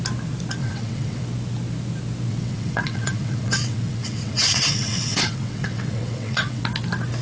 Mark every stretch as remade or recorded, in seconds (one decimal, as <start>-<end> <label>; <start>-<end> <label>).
0.0-0.6 recorded; 0.6-1.2 remade; 1.2-2.3 recorded; 2.3-6.6 remade; 6.6-7.2 recorded